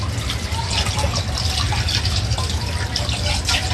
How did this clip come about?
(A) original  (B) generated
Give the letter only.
A